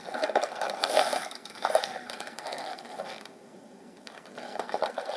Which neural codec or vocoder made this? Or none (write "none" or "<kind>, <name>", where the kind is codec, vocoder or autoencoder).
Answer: codec, SNAC